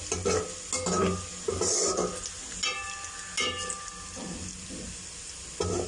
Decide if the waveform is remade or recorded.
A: recorded